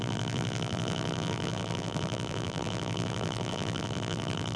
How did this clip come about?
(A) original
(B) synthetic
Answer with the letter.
B